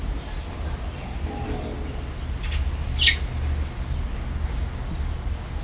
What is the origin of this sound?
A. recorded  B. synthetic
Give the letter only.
A